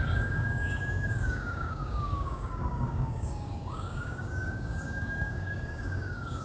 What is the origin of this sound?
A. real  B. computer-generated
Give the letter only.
B